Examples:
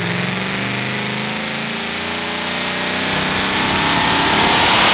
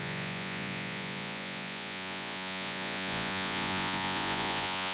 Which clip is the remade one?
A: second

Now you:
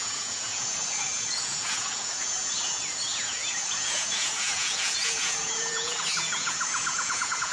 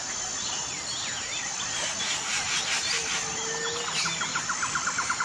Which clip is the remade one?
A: first